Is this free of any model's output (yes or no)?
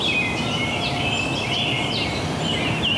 yes